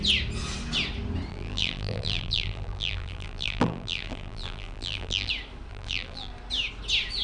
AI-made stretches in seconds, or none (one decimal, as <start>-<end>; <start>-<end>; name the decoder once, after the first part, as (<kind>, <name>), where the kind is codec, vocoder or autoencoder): 1.3-5.3 (vocoder, BigVGAN v2); 5.7-6.3